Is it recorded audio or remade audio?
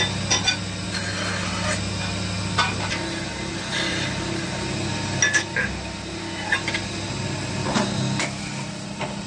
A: recorded